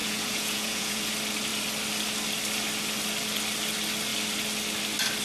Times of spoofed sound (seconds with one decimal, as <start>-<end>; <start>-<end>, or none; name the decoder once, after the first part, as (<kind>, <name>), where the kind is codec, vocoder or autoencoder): 0.0-1.1 (vocoder, Vocos)